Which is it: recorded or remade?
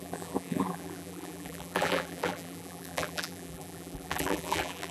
remade